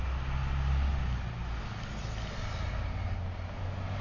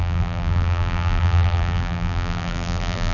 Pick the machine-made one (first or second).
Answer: second